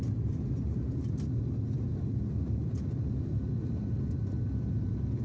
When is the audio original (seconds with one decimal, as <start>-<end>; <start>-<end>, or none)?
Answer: 0.0-5.2